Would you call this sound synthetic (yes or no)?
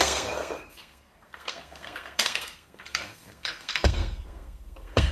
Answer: yes